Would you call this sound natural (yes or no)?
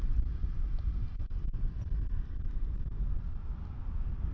yes